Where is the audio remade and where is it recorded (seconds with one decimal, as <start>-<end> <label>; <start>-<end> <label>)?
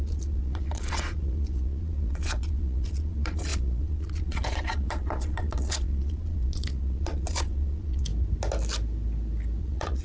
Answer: 0.0-8.1 remade; 8.1-9.6 recorded; 9.6-10.0 remade